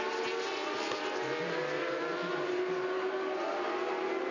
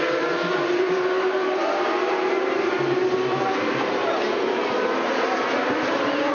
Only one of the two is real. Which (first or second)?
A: first